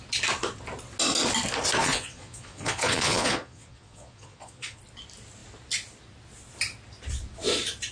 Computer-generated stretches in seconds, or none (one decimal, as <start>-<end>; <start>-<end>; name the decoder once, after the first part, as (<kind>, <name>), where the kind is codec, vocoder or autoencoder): 1.8-4.8 (vocoder, Vocos)